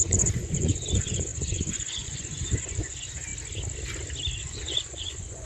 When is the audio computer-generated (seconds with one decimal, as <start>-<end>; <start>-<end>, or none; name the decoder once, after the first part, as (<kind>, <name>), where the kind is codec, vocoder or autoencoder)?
0.0-3.3 (vocoder, Vocos); 4.4-5.5